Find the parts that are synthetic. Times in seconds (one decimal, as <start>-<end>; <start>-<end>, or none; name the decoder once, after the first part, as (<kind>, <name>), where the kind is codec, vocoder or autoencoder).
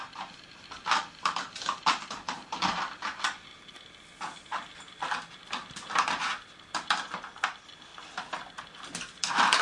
none